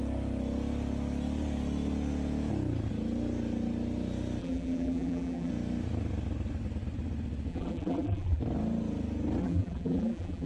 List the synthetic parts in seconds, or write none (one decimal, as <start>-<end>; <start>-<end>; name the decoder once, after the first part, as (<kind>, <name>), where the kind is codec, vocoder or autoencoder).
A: 4.4-5.5 (vocoder, BigVGAN v2); 7.5-8.4; 9.4-10.5